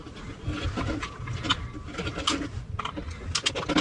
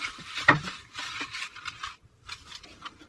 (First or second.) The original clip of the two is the first